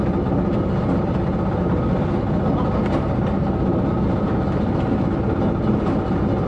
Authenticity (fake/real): real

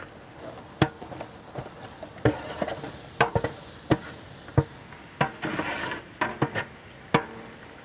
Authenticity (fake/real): real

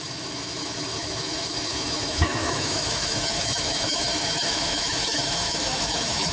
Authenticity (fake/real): fake